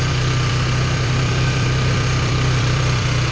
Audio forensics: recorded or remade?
remade